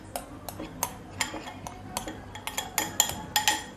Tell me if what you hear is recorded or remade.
recorded